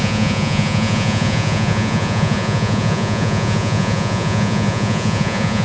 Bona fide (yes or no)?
no